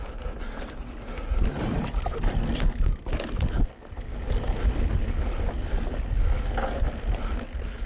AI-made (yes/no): no